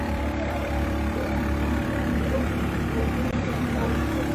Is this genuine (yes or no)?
no